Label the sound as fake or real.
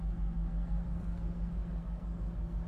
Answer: fake